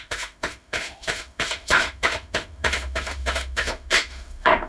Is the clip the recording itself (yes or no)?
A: no